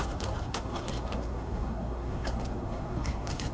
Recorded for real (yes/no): no